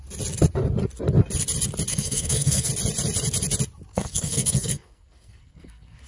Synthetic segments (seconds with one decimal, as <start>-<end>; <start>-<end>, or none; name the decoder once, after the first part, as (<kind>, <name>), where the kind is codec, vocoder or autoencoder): 1.9-2.7 (codec, SNAC); 3.9-6.1